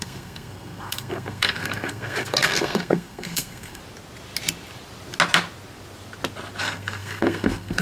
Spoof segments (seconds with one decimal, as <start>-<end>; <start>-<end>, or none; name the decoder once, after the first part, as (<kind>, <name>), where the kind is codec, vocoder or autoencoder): 0.0-3.8 (codec, SNAC); 6.6-7.8